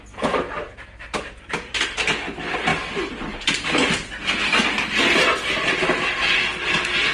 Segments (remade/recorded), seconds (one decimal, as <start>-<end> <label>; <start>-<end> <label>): 0.0-7.1 recorded